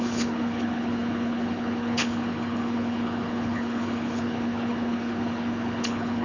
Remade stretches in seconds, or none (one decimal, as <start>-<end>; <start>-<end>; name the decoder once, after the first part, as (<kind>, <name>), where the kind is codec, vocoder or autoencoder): 0.0-6.2 (codec, HILCodec)